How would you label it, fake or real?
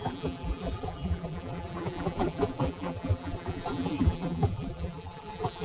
fake